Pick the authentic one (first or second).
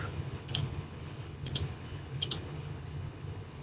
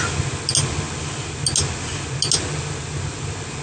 second